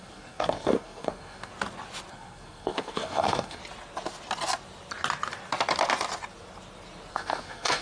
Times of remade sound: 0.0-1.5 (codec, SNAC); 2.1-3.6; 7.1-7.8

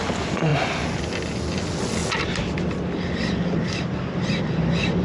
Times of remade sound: none

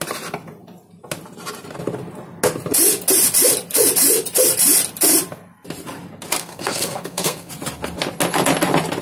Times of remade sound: 6.4-7.5 (codec, SNAC)

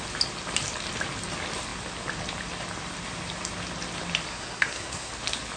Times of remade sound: 4.3-5.1 (codec, SNAC)